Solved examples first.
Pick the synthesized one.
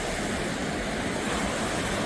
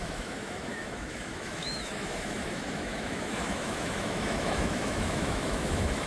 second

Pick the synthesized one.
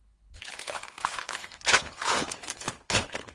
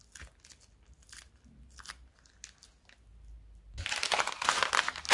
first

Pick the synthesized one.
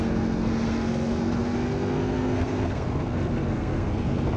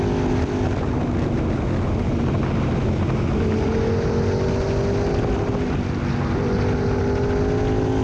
first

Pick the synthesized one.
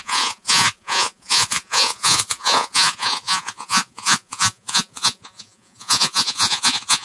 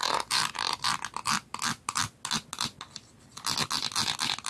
first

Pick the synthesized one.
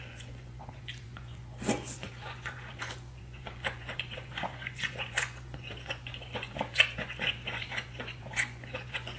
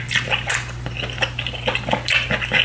first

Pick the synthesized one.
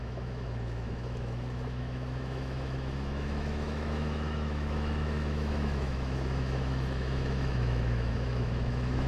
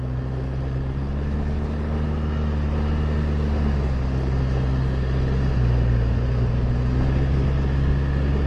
first